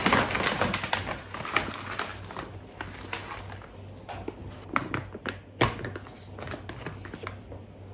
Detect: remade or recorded recorded